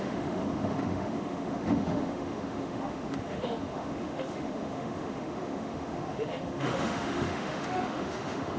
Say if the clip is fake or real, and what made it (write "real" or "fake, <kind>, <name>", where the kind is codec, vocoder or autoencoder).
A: fake, autoencoder, DAC-VAE